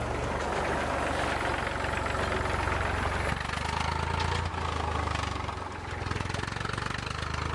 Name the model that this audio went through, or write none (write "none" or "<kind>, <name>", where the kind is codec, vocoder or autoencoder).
none